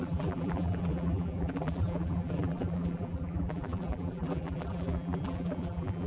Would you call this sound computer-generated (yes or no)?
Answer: yes